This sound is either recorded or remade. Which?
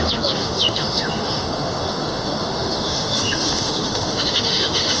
remade